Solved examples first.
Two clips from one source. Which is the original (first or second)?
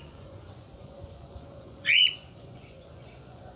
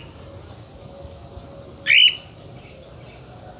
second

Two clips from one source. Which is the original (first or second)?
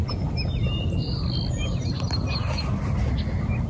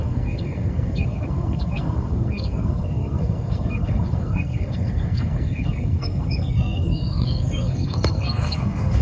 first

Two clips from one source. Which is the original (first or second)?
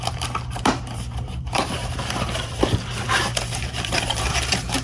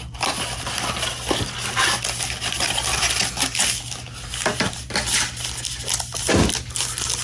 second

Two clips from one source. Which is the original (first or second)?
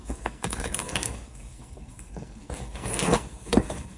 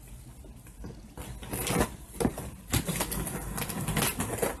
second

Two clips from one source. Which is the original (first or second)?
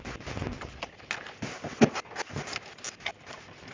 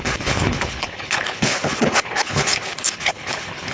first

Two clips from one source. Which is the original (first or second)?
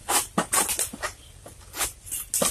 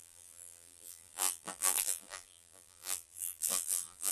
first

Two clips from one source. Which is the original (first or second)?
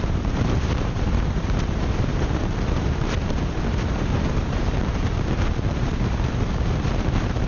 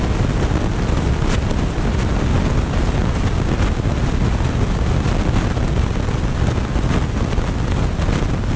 second